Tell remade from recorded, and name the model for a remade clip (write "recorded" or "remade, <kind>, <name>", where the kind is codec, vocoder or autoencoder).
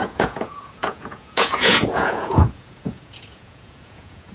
remade, vocoder, Vocos